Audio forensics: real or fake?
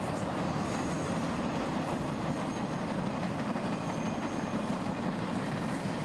fake